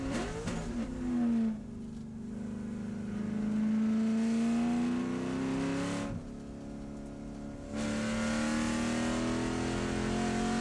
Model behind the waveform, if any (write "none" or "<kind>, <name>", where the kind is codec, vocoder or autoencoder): none